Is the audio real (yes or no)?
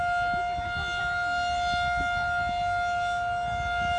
yes